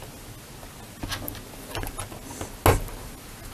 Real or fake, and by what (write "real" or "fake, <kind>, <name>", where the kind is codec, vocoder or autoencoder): real